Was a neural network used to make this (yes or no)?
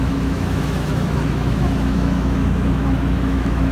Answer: yes